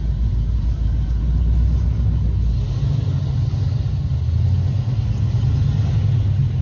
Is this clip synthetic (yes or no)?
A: no